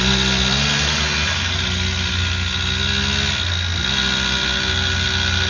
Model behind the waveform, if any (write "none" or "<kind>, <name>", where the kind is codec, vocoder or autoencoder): none